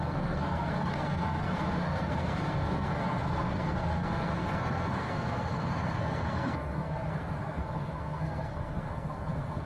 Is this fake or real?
fake